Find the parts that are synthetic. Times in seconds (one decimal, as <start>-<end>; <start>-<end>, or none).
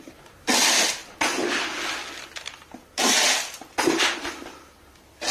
none